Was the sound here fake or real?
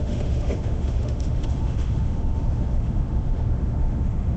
fake